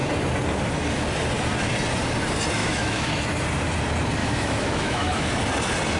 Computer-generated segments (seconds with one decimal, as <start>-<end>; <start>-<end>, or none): 2.6-3.2; 4.2-5.3